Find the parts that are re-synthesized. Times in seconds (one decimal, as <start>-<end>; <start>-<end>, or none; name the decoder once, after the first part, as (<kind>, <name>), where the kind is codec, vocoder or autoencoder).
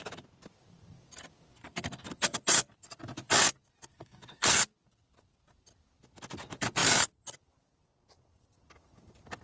1.5-2.1 (codec, SNAC); 3.9-4.6